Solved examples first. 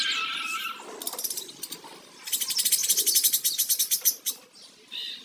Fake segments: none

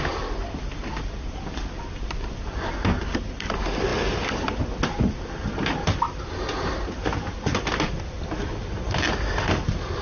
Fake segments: none

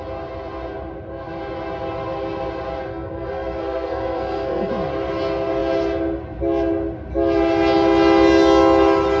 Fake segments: 2.9-4.7 (codec, SNAC)